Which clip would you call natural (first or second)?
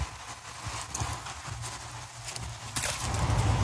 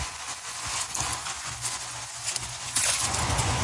first